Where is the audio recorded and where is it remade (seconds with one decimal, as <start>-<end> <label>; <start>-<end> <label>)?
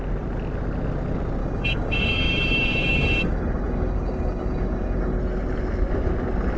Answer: 0.0-1.4 recorded; 1.4-5.2 remade; 5.2-6.6 recorded